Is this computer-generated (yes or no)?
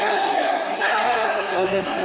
yes